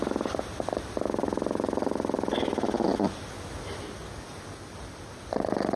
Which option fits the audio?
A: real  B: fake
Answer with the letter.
A